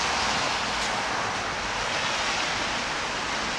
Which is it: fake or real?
real